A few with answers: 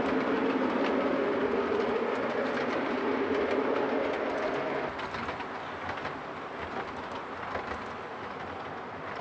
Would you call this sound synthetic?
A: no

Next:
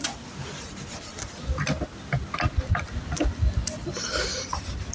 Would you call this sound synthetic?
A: no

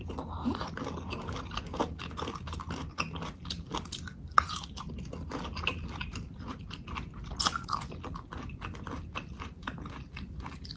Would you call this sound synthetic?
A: no